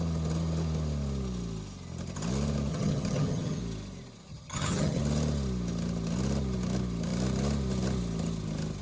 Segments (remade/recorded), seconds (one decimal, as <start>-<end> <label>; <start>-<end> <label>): 0.0-2.7 recorded; 2.7-3.6 remade; 3.6-4.3 recorded; 4.3-5.0 remade; 5.0-8.8 recorded

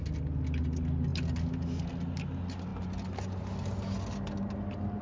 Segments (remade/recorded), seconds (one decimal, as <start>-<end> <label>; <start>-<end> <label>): 0.0-5.0 recorded